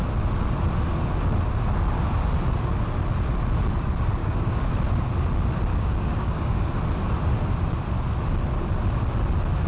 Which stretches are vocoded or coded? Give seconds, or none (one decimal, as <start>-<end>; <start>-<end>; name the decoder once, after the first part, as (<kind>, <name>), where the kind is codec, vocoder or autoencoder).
4.2-4.7 (codec, DAC); 5.7-6.7